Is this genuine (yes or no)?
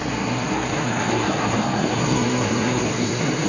no